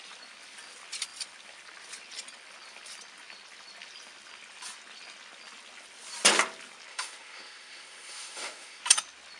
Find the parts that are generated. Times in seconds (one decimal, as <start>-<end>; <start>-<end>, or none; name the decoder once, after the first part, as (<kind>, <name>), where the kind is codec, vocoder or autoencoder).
6.9-8.8 (autoencoder, DAC-VAE)